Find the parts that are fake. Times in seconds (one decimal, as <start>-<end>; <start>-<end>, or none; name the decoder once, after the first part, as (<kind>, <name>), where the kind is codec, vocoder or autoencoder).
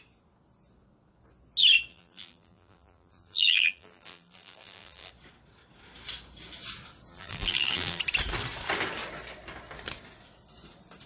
1.9-5.1 (vocoder, BigVGAN v2); 7.1-8.0